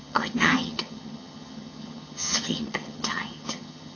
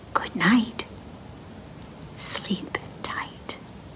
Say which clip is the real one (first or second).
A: second